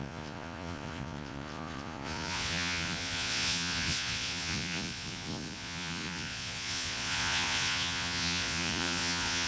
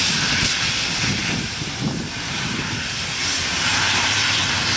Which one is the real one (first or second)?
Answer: second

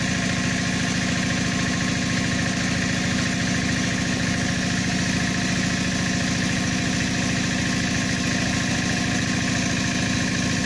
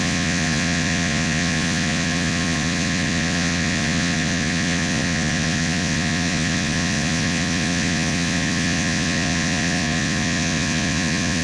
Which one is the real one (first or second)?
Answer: first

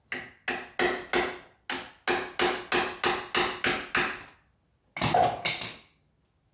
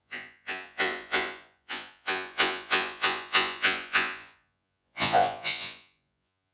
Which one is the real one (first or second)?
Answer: first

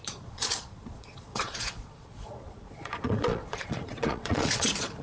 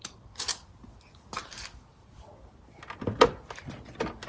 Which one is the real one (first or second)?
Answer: second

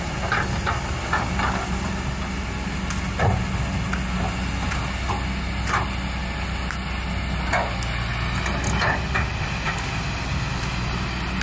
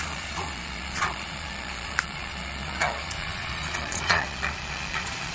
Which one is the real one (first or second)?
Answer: first